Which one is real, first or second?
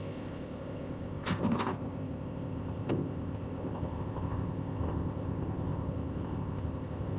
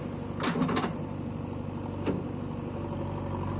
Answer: second